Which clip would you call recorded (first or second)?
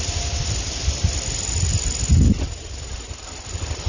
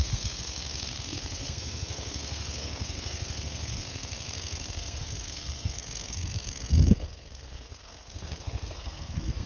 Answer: first